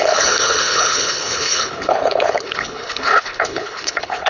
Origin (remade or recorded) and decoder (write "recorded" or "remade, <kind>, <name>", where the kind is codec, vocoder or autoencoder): remade, codec, HILCodec